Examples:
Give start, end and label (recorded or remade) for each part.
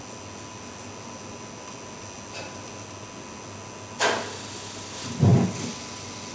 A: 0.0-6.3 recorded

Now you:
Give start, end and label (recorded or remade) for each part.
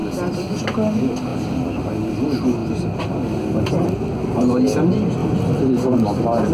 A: 0.0-6.5 recorded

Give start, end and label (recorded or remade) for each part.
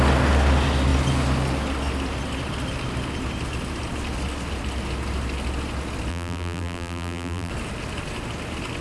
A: 0.0-6.1 recorded; 6.1-7.5 remade; 7.5-8.8 recorded